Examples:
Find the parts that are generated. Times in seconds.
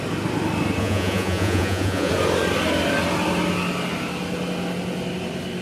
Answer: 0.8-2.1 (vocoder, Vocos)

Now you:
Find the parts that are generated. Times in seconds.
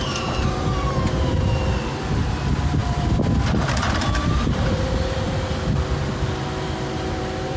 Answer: 0.0-7.6 (vocoder, BigVGAN v2)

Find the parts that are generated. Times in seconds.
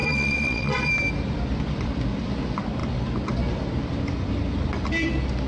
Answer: 0.0-0.9 (vocoder, Vocos)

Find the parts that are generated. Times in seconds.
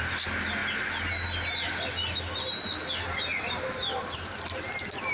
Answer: 0.0-0.6 (vocoder, BigVGAN v2); 3.4-5.1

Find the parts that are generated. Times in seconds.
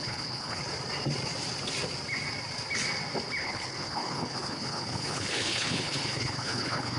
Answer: 0.0-0.6 (codec, HILCodec); 3.4-7.0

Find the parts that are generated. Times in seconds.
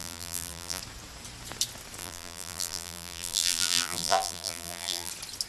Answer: 0.0-0.8 (vocoder, BigVGAN v2); 2.0-5.1